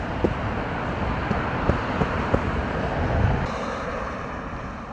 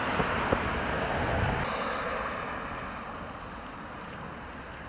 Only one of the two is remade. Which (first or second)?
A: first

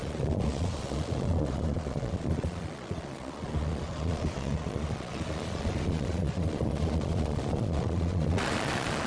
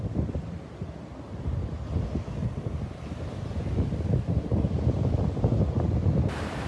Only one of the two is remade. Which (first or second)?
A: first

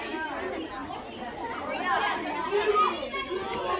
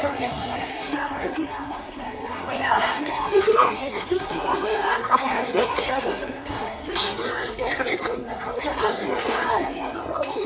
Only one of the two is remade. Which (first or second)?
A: second